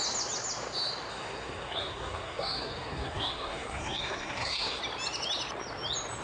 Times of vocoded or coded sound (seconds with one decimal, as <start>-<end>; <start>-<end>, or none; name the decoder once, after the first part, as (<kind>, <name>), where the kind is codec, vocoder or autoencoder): 1.1-4.8 (codec, SNAC)